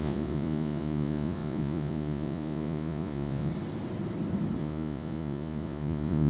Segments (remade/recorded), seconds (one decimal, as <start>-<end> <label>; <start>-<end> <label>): 0.0-3.5 remade; 3.5-4.6 recorded; 4.6-6.3 remade